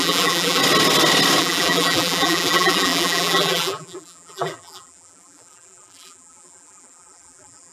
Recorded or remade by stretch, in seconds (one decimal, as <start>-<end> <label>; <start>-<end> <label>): 0.0-0.6 remade; 0.6-1.4 recorded; 1.4-7.7 remade